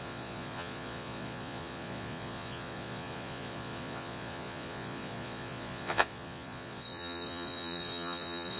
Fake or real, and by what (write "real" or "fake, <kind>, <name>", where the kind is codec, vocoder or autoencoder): fake, vocoder, Vocos